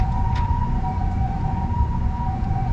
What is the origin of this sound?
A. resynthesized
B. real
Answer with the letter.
A